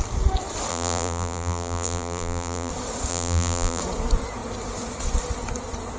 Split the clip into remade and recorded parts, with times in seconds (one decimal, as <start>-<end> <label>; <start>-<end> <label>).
0.0-0.7 recorded; 0.7-2.7 remade; 2.7-3.1 recorded; 3.1-3.8 remade; 3.8-6.0 recorded